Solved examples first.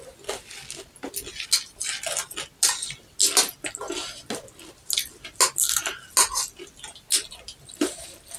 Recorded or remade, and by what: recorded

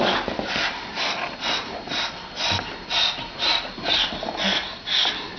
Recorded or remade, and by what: recorded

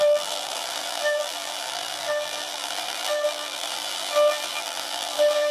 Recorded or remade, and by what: remade, vocoder, BigVGAN v2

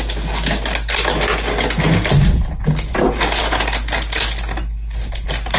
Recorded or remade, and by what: recorded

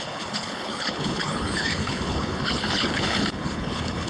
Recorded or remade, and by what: remade, codec, HILCodec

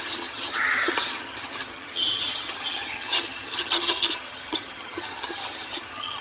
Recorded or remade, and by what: remade, vocoder, HiFi-GAN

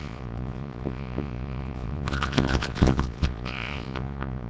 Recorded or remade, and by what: remade, vocoder, Vocos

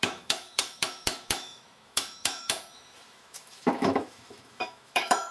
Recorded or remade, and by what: remade, autoencoder, DAC-VAE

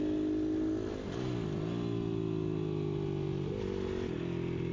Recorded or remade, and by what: recorded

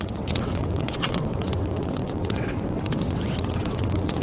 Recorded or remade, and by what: remade, vocoder, WaveNeXt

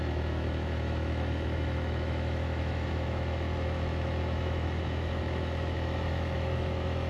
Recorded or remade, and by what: remade, autoencoder, DAC-VAE